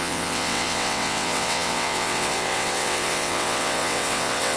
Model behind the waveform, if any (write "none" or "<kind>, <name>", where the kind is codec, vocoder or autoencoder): vocoder, WaveNeXt